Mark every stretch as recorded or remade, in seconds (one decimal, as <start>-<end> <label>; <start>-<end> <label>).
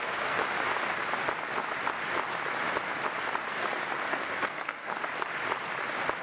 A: 0.0-0.4 remade; 0.4-4.1 recorded; 4.1-4.9 remade; 4.9-6.2 recorded